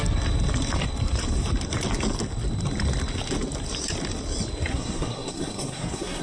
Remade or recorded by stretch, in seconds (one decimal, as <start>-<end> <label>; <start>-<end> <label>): 0.0-4.7 recorded; 4.7-6.2 remade